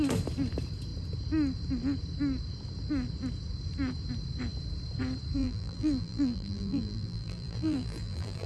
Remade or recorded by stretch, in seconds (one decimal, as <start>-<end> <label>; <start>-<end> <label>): 0.0-5.4 recorded; 5.4-8.5 remade